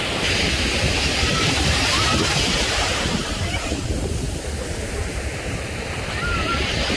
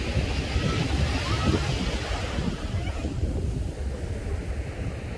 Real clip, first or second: second